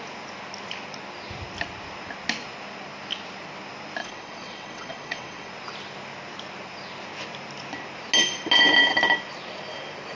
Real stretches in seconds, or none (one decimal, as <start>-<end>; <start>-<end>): 0.0-4.0; 5.5-10.2